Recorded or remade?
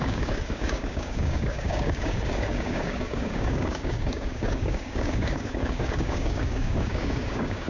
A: remade